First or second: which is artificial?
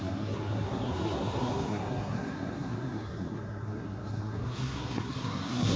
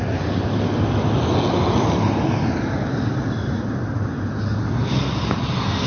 first